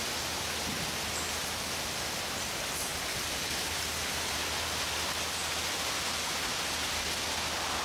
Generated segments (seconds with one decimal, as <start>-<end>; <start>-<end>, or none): none